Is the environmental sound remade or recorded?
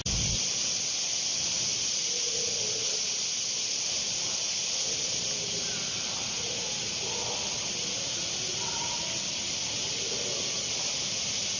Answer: recorded